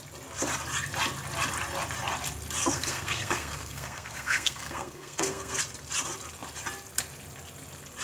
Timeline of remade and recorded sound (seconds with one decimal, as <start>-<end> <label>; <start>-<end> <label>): 0.0-2.6 recorded; 2.6-5.6 remade; 5.6-8.0 recorded